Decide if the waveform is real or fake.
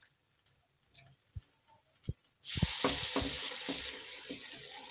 real